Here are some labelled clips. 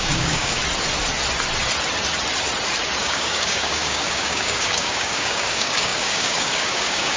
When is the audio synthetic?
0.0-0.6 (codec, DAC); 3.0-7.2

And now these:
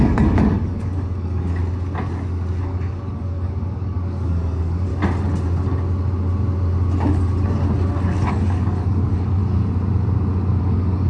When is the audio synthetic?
0.0-1.6 (codec, DAC); 2.6-4.9; 8.3-9.4; 10.6-11.1

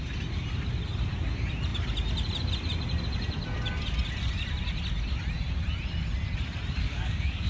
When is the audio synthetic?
6.8-7.5 (codec, DAC)